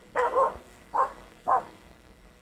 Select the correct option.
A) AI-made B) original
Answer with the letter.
A